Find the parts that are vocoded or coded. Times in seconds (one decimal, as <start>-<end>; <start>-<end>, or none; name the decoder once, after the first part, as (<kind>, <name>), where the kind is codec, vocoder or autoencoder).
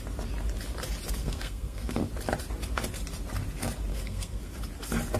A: 1.2-2.1 (codec, SNAC); 3.9-4.5